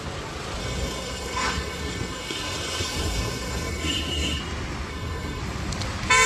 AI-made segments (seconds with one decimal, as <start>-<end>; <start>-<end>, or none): 0.6-4.4; 4.9-5.4